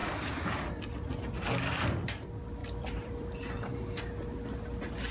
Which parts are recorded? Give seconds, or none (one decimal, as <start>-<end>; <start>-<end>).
0.0-2.6; 4.0-5.1